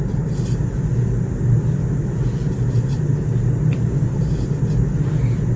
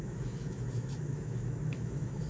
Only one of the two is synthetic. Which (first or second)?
second